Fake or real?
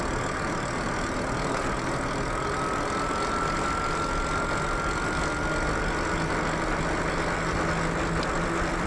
real